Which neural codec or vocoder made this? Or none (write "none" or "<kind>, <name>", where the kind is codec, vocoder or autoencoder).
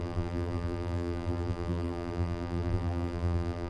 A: vocoder, BigVGAN v2